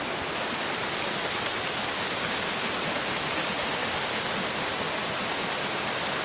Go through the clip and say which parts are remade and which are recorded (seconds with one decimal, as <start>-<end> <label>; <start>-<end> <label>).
0.0-6.2 recorded